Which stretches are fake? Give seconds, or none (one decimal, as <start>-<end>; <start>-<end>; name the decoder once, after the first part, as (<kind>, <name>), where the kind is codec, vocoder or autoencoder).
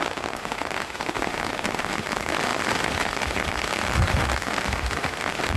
0.0-5.6 (autoencoder, DAC-VAE)